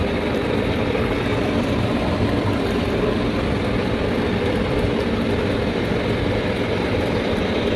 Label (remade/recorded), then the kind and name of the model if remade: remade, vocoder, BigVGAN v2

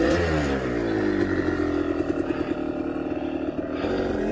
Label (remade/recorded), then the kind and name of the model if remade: recorded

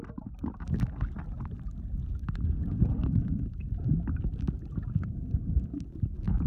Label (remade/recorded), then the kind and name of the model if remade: recorded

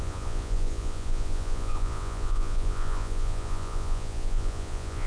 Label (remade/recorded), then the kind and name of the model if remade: remade, vocoder, Vocos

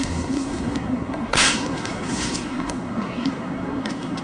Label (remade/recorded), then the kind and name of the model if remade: remade, codec, SNAC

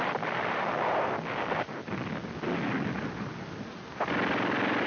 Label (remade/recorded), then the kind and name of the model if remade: recorded